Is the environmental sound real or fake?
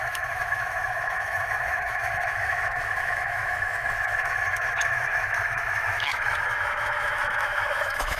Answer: fake